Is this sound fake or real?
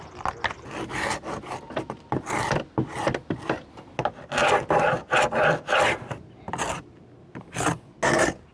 real